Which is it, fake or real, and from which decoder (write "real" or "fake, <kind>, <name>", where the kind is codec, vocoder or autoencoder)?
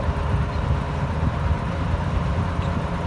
real